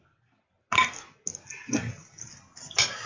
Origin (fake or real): real